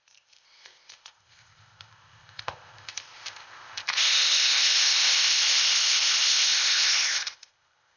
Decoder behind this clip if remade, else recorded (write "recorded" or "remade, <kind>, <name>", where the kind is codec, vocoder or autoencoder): remade, codec, ZipCodec